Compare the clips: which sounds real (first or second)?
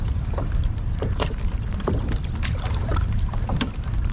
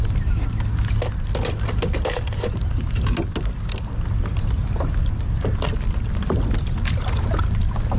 second